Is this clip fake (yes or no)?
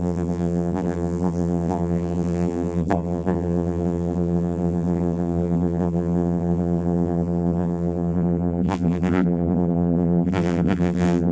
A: yes